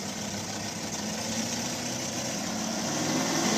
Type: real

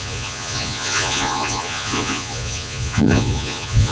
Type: fake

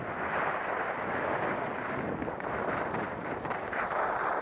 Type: real